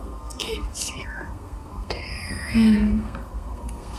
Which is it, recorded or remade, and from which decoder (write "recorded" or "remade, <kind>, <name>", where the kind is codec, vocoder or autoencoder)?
remade, codec, SNAC